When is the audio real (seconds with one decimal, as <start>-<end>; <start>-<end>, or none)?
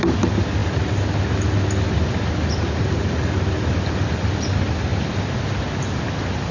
0.0-6.5